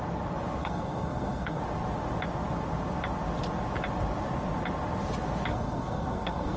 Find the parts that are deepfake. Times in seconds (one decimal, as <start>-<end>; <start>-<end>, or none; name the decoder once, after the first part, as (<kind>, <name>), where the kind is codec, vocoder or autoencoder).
0.6-1.6 (codec, SNAC); 5.5-6.6